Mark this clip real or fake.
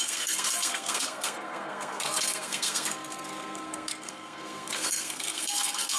fake